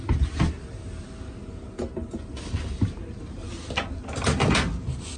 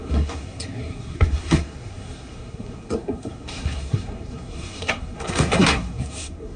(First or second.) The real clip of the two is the first